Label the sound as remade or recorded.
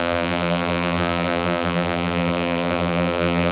remade